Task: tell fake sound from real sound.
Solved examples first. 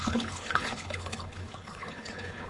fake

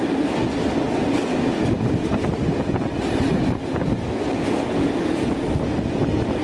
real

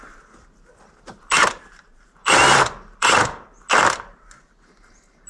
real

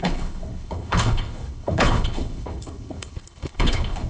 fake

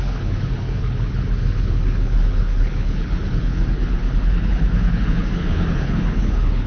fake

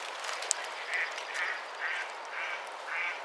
real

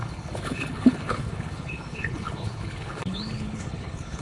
fake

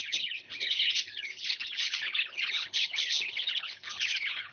fake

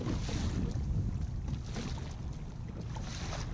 real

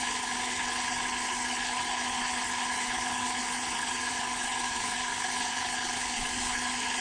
fake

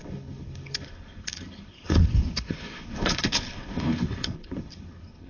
fake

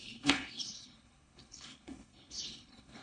fake